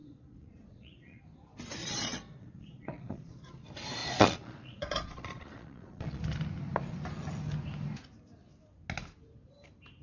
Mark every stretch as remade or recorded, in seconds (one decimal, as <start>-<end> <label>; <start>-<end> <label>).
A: 0.0-1.2 remade; 1.2-1.8 recorded; 1.8-3.4 remade; 3.4-4.0 recorded; 4.0-6.2 remade; 6.2-10.0 recorded